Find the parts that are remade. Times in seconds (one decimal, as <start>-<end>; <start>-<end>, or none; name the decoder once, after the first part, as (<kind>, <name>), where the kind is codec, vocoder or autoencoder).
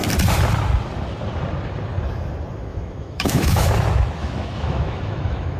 2.7-3.7 (autoencoder, DAC-VAE); 4.2-5.6